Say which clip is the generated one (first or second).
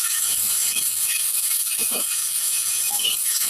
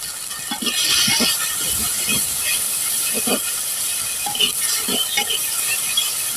first